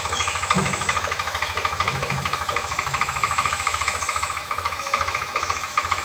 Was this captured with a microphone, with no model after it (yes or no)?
no